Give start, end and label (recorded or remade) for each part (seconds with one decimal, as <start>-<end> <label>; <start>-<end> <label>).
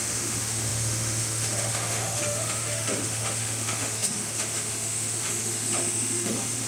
0.0-6.7 remade